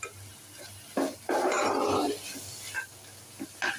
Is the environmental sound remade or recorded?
recorded